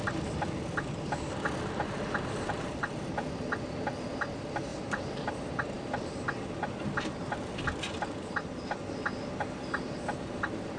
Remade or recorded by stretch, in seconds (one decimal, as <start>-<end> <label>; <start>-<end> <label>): 0.0-4.7 recorded; 4.7-5.3 remade; 5.3-10.8 recorded